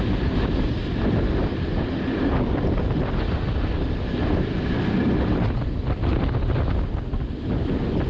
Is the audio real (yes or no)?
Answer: yes